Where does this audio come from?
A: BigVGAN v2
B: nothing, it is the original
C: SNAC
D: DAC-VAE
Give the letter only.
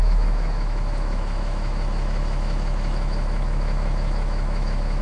D